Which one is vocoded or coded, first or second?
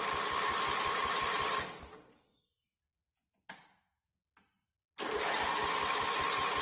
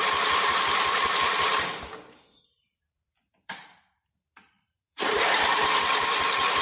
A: second